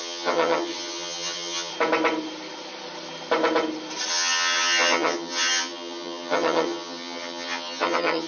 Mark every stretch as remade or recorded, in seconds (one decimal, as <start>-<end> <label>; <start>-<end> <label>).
0.0-1.7 remade; 1.7-4.1 recorded; 4.1-8.3 remade